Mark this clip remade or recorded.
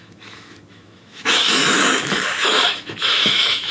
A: remade